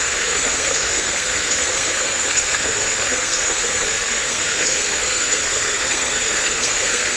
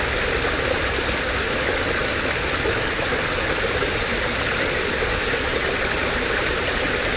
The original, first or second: second